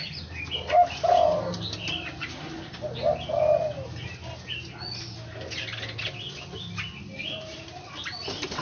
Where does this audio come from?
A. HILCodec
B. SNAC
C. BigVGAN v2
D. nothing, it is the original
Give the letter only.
D